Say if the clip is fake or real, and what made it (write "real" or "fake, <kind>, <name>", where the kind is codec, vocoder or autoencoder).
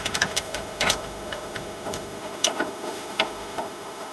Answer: fake, autoencoder, DAC-VAE